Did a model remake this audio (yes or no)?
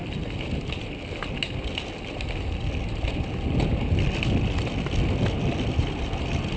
no